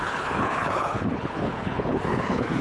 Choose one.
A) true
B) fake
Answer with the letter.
B